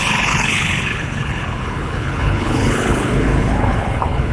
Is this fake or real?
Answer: fake